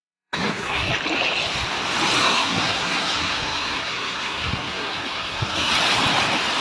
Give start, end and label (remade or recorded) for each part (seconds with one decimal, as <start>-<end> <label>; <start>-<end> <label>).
0.0-0.9 remade; 0.9-2.2 recorded; 2.2-5.7 remade; 5.7-6.6 recorded